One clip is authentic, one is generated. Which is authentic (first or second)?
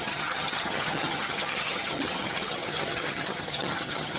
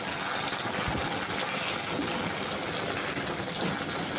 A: second